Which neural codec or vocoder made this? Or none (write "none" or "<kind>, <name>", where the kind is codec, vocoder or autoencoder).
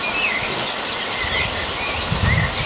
none